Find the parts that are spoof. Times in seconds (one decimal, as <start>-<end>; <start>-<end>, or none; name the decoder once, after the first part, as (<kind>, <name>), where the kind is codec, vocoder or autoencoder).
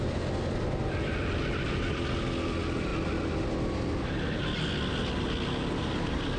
none